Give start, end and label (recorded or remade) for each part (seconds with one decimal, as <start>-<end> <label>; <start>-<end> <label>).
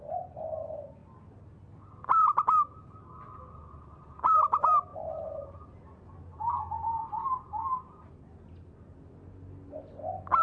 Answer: 0.0-4.9 recorded; 4.9-6.5 remade; 6.5-10.4 recorded